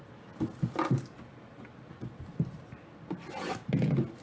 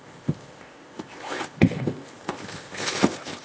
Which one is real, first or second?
first